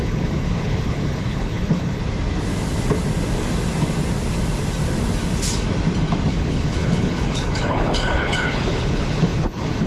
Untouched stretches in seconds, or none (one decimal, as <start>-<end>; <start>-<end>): 2.0-6.3